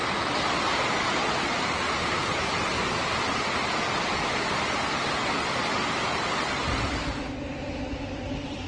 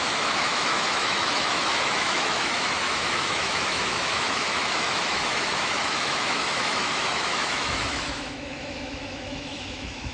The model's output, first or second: second